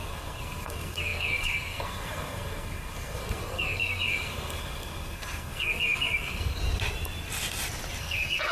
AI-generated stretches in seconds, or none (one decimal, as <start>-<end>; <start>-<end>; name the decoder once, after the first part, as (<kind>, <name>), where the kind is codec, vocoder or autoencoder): 0.0-6.6 (codec, SNAC); 8.0-8.5